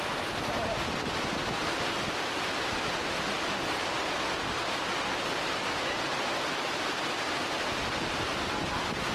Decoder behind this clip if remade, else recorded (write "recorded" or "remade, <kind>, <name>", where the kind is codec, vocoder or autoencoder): recorded